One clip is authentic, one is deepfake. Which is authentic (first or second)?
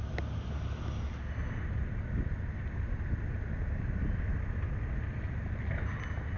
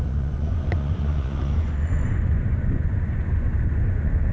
first